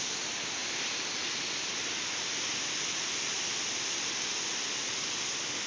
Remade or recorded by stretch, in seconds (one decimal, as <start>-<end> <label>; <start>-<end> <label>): 0.0-5.7 recorded